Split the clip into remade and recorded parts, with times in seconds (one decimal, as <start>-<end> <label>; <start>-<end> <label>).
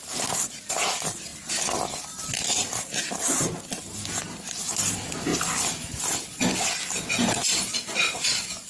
0.0-8.7 recorded